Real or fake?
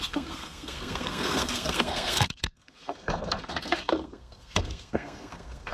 fake